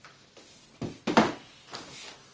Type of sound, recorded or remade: recorded